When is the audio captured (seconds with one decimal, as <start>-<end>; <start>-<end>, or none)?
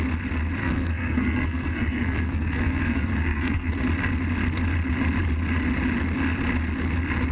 0.0-0.6; 3.7-7.3